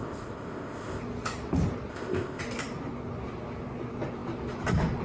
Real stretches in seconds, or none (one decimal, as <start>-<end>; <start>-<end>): 1.0-1.9; 2.4-5.0

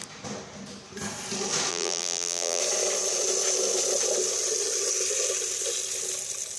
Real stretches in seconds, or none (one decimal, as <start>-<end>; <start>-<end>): 0.0-1.7; 2.6-6.6

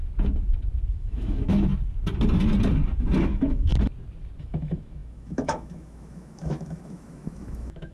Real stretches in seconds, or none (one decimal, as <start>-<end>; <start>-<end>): 0.0-0.9; 1.7-3.2; 3.7-4.4

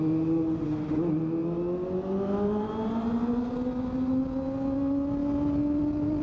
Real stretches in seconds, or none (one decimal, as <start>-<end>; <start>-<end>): 0.0-6.2

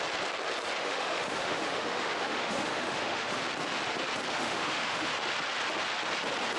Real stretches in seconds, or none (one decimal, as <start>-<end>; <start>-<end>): 0.0-0.8; 3.4-4.3; 5.1-6.6

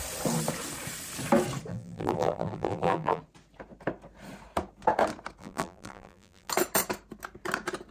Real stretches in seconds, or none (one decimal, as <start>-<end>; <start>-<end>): 0.0-1.7; 3.2-5.4; 6.5-7.9